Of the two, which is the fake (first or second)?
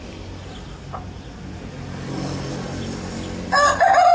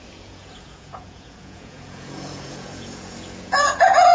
second